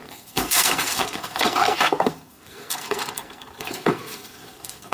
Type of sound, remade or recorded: remade